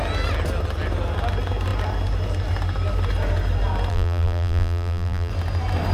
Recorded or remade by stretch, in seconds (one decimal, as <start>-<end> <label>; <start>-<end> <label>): 0.0-3.9 recorded; 3.9-5.3 remade; 5.3-5.9 recorded